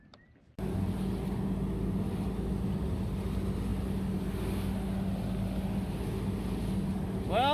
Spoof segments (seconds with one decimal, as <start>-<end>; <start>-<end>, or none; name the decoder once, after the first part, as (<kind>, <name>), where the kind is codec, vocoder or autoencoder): none